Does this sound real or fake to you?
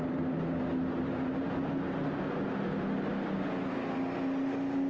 real